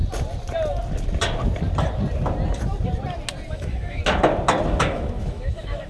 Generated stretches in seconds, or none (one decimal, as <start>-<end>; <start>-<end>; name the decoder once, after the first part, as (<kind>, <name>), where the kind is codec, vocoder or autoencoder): 3.5-4.0 (autoencoder, DAC-VAE); 4.8-5.9